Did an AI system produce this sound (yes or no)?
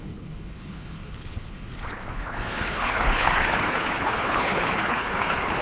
yes